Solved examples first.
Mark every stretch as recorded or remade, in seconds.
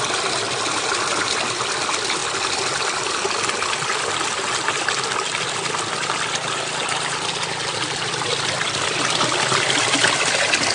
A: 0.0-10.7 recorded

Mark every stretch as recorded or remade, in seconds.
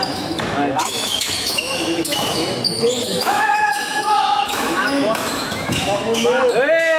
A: 0.0-7.0 remade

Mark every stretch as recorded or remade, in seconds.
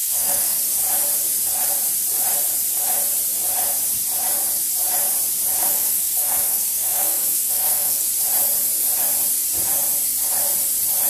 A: 0.0-0.6 remade; 0.6-5.6 recorded; 5.6-8.1 remade; 8.1-11.1 recorded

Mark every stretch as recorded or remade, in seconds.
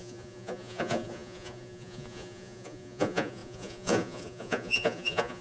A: 0.0-5.4 remade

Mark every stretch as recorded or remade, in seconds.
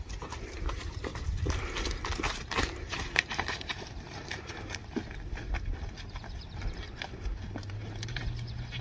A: 0.0-1.1 remade; 1.1-2.5 recorded; 2.5-4.8 remade; 4.8-7.6 recorded; 7.6-8.8 remade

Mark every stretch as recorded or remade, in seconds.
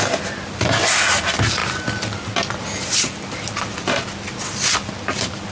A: 0.0-5.5 recorded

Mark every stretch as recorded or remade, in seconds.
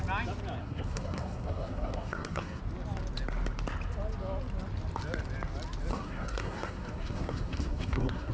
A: 0.0-0.6 recorded; 0.6-2.6 remade; 2.6-5.9 recorded; 5.9-8.3 remade